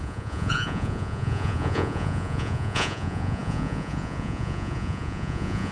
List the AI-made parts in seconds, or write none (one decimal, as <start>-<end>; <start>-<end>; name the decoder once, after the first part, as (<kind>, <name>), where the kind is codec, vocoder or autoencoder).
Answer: 0.0-5.7 (vocoder, Vocos)